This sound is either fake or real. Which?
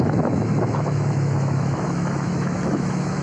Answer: fake